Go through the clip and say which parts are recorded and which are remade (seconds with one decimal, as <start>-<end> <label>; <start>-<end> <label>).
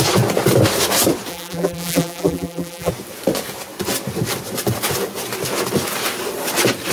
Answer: 0.0-1.3 recorded; 1.3-2.9 remade; 2.9-6.9 recorded